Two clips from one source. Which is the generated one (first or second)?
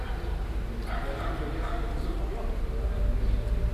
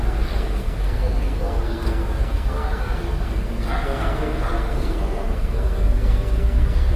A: second